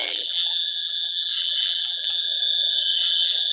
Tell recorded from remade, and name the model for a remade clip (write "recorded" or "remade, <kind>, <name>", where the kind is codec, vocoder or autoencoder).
remade, vocoder, BigVGAN v2